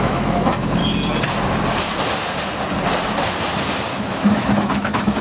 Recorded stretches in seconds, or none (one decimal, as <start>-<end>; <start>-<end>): 0.8-3.9